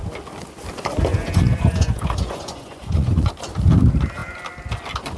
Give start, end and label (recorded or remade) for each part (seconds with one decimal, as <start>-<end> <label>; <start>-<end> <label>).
0.0-1.1 recorded; 1.1-3.3 remade; 3.3-5.2 recorded